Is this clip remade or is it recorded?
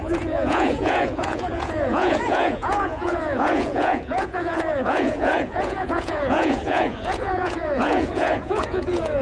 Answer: remade